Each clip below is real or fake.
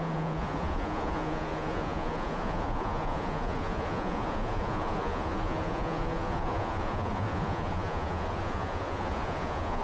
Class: fake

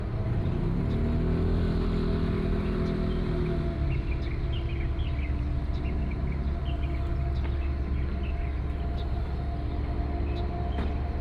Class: real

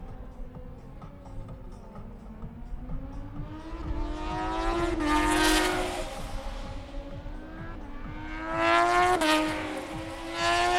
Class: real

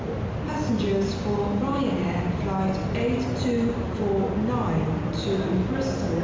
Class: real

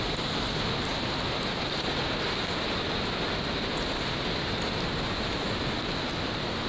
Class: real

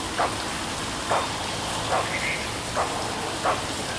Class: real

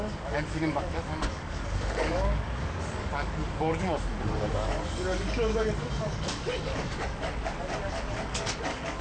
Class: fake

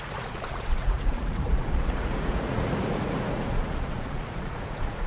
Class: fake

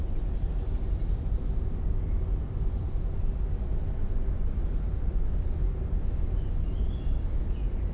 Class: real